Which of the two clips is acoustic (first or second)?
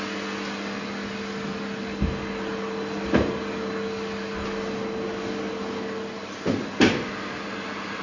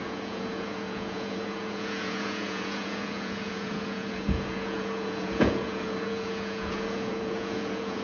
first